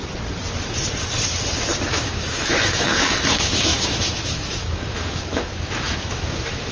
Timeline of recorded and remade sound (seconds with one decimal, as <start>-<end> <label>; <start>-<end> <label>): 0.0-1.9 recorded; 1.9-6.7 remade